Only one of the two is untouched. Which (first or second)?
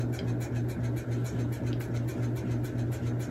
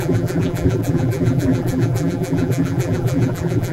first